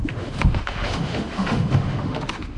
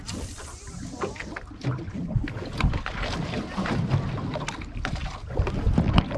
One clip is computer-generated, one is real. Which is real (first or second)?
second